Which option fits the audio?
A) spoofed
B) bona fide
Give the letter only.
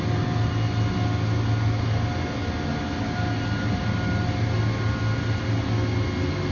B